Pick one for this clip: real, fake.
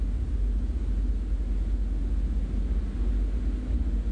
real